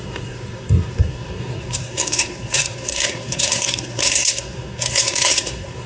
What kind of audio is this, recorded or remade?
remade